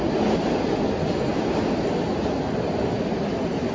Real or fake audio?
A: real